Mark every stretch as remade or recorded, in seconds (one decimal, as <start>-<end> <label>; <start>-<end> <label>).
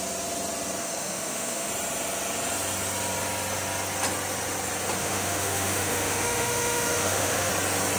0.0-0.8 recorded; 0.8-1.7 remade; 1.7-5.0 recorded; 5.0-7.5 remade; 7.5-8.0 recorded